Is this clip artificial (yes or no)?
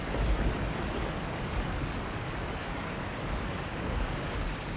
yes